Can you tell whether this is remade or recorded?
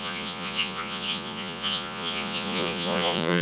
remade